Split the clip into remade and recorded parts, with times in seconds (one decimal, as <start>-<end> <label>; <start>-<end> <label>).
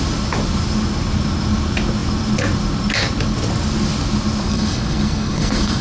0.0-4.4 recorded; 4.4-5.8 remade